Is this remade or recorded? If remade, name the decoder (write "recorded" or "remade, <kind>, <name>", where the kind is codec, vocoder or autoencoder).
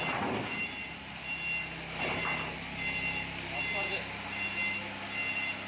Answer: recorded